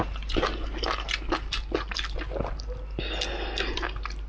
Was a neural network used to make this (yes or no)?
no